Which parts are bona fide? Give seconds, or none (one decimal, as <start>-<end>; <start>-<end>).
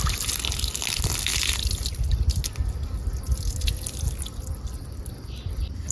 0.0-5.9